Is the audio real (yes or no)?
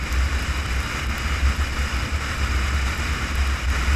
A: yes